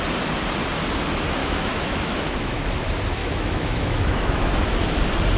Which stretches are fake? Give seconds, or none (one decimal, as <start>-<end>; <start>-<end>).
1.4-2.6; 3.2-4.6